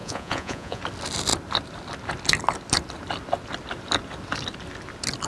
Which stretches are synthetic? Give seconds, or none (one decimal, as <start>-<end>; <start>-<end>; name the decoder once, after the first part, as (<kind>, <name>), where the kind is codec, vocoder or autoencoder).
0.0-0.8 (vocoder, Vocos)